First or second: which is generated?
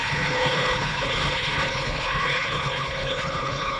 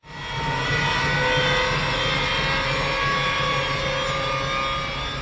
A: first